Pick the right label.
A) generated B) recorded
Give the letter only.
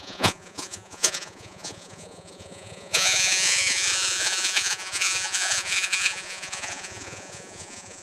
A